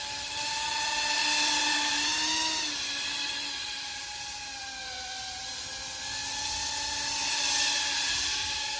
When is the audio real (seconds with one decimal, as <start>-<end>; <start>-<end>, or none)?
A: 1.2-1.7; 2.1-3.6; 5.7-7.8

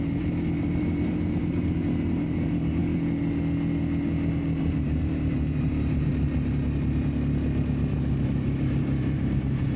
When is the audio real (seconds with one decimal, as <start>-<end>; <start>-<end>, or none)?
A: 2.8-4.6; 6.1-8.8

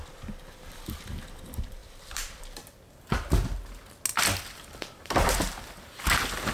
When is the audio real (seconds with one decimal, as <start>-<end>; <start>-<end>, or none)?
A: 0.0-1.8; 2.4-4.1; 6.0-6.5